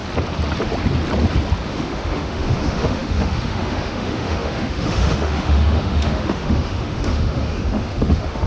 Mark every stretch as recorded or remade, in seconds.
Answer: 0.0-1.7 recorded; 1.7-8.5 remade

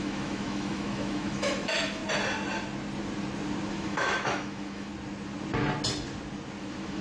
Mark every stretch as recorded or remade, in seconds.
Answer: 0.0-2.0 remade; 2.0-3.7 recorded; 3.7-4.9 remade; 4.9-6.6 recorded; 6.6-7.0 remade

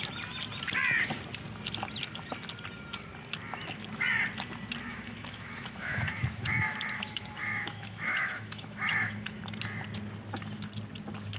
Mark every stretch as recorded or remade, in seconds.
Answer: 0.0-4.9 recorded; 4.9-9.4 remade; 9.4-11.4 recorded

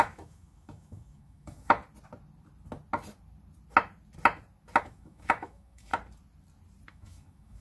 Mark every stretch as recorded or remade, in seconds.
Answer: 0.0-1.8 remade; 1.8-4.8 recorded; 4.8-5.9 remade; 5.9-6.9 recorded; 6.9-7.6 remade

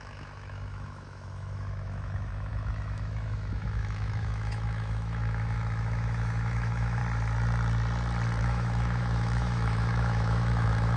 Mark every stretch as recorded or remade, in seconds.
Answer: 0.0-7.0 remade; 7.0-8.4 recorded; 8.4-11.0 remade

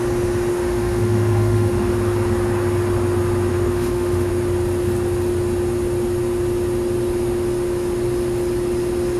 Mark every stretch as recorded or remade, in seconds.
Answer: 0.0-0.5 recorded; 0.5-1.9 remade; 1.9-3.5 recorded; 3.5-4.3 remade; 4.3-9.2 recorded